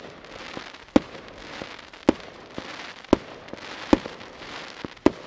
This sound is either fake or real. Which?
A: real